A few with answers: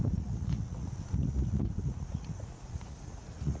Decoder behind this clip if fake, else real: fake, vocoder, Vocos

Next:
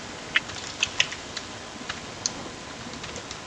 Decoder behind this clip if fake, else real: real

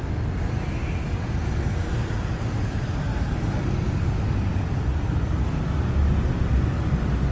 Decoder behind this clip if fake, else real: real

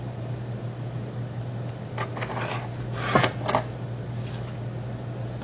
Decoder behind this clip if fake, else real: real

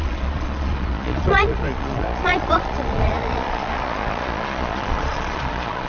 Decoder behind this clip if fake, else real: fake, vocoder, Vocos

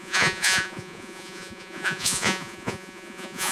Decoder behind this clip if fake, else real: fake, vocoder, Vocos